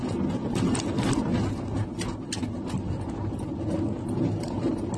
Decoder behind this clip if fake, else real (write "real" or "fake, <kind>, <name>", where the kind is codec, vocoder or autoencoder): real